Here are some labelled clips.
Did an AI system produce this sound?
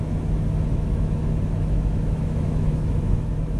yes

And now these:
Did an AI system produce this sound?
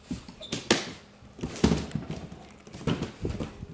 no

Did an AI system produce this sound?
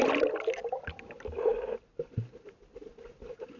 no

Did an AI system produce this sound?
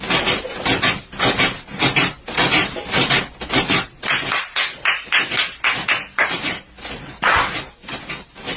no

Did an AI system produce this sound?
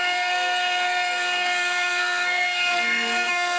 yes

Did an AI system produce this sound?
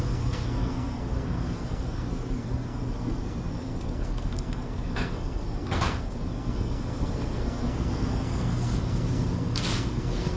yes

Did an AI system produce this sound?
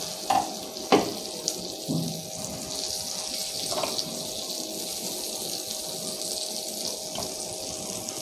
no